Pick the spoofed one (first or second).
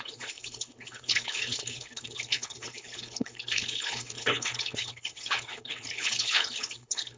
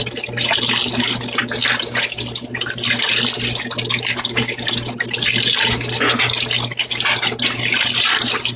first